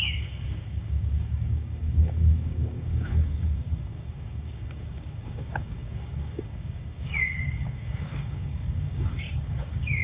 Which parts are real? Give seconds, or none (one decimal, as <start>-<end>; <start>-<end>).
none